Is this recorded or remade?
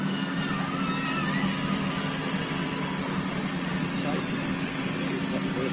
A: recorded